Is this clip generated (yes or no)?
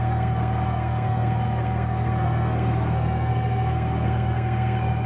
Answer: yes